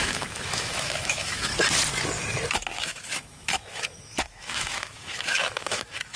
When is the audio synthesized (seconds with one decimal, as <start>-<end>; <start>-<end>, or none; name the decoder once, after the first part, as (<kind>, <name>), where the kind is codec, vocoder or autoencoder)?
0.0-1.5 (autoencoder, DAC-VAE); 2.5-6.2

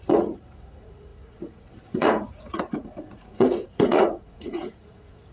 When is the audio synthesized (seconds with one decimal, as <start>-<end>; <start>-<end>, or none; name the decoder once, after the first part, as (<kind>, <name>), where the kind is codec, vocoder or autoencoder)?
0.0-5.3 (vocoder, Vocos)

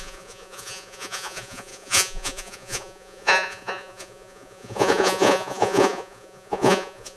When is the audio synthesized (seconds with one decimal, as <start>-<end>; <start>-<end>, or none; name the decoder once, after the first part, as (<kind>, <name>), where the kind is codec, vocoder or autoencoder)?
0.0-7.2 (vocoder, Vocos)

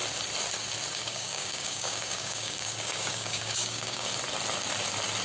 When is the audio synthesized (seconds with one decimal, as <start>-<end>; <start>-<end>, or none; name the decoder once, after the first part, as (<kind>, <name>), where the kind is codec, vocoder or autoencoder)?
1.0-4.1 (codec, DAC)

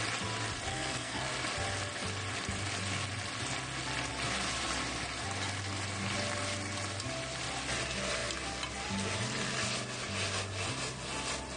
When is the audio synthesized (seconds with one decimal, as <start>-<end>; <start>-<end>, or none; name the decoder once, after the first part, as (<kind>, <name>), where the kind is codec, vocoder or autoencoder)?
0.7-1.3 (codec, SNAC)

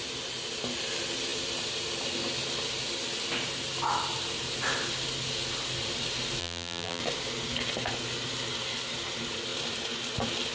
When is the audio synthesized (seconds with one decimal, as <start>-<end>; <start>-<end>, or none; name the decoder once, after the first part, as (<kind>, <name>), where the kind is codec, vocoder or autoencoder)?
6.4-7.0 (vocoder, BigVGAN v2)

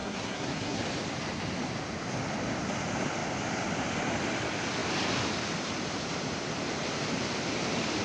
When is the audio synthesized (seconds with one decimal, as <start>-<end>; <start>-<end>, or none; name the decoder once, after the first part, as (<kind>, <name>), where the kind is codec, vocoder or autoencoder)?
0.0-0.8 (codec, SNAC)